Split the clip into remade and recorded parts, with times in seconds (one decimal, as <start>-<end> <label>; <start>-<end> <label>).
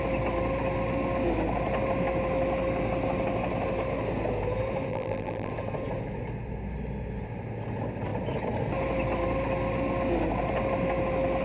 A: 0.0-4.9 recorded; 4.9-5.5 remade; 5.5-11.4 recorded